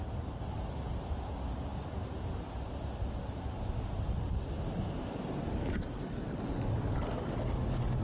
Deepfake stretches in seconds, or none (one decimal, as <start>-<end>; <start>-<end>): none